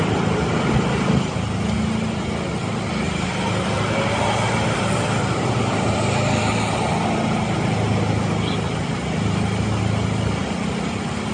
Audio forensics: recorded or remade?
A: recorded